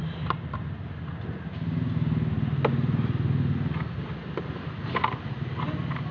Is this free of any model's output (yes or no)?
yes